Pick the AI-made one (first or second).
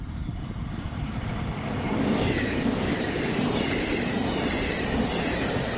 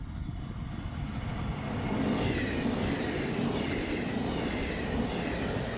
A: first